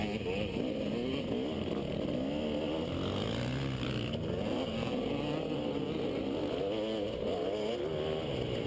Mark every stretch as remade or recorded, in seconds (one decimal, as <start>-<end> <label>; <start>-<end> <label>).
0.0-8.7 recorded